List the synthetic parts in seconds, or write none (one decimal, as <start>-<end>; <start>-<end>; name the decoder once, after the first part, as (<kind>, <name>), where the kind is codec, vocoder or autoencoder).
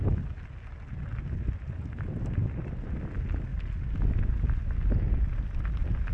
none